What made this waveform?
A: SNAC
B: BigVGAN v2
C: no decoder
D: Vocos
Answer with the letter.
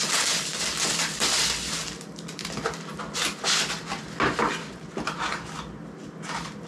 C